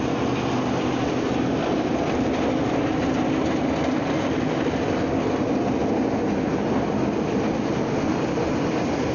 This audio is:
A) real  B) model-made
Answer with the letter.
A